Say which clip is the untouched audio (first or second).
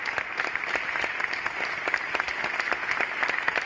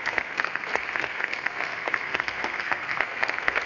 first